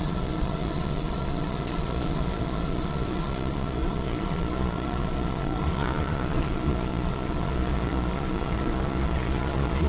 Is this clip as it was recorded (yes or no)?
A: no